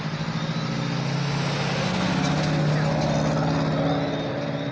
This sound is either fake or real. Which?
real